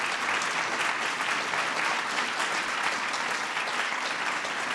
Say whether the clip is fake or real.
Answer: real